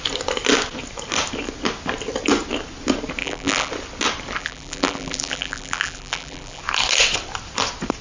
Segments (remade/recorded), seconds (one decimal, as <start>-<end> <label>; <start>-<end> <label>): 0.0-3.2 recorded; 3.2-3.7 remade; 3.7-4.4 recorded; 4.4-6.6 remade; 6.6-8.0 recorded